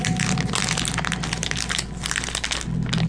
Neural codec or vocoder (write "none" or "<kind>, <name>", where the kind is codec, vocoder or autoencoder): none